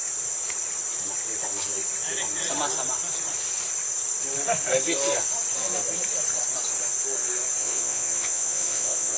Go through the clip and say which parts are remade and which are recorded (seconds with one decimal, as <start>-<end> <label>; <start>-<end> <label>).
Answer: 0.0-7.6 recorded; 7.6-9.2 remade

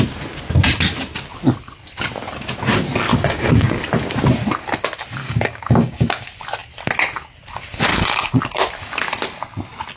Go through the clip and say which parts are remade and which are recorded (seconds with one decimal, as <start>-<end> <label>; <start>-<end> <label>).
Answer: 0.0-3.1 recorded; 3.1-3.8 remade; 3.8-5.2 recorded; 5.2-6.0 remade; 6.0-7.9 recorded; 7.9-8.4 remade; 8.4-10.0 recorded

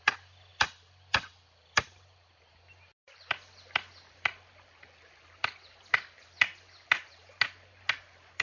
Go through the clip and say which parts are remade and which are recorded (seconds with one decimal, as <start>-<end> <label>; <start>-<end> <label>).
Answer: 0.0-0.5 recorded; 0.5-1.8 remade; 1.8-2.9 recorded; 2.9-5.9 remade; 5.9-8.4 recorded

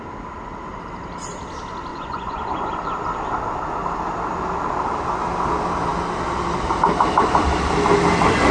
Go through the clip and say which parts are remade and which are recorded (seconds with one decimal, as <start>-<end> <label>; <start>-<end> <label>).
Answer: 0.0-1.9 recorded; 1.9-2.7 remade; 2.7-8.5 recorded

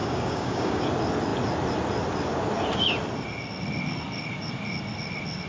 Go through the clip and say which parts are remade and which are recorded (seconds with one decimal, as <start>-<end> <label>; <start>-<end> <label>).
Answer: 0.0-0.8 remade; 0.8-5.5 recorded